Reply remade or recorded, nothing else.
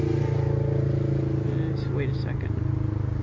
recorded